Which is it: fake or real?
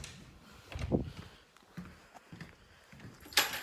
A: real